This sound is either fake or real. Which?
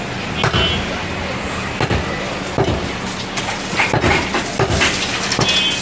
real